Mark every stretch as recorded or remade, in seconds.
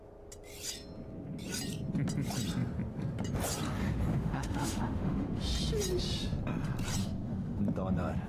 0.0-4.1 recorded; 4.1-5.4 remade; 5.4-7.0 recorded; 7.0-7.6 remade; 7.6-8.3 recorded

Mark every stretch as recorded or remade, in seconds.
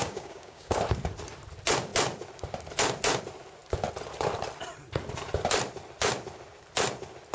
0.0-0.8 remade; 0.8-7.3 recorded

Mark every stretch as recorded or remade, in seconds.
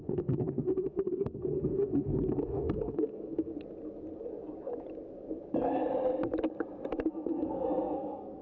0.0-3.5 remade; 3.5-7.1 recorded; 7.1-8.4 remade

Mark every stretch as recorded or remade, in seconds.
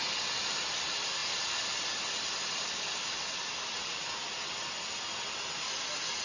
0.0-6.2 recorded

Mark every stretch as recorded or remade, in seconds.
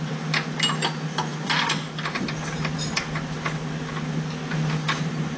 0.0-5.4 recorded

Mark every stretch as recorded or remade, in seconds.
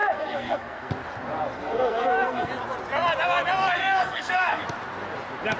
0.0-0.9 remade; 0.9-1.5 recorded; 1.5-2.5 remade; 2.5-3.6 recorded; 3.6-4.6 remade; 4.6-5.6 recorded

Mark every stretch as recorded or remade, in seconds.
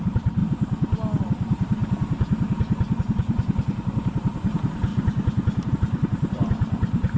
0.0-0.4 remade; 0.4-1.2 recorded; 1.2-1.8 remade; 1.8-3.0 recorded; 3.0-4.9 remade; 4.9-5.7 recorded; 5.7-7.2 remade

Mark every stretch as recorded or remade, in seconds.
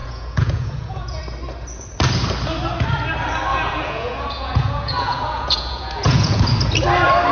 0.0-1.2 remade; 1.2-3.5 recorded; 3.5-6.4 remade; 6.4-7.3 recorded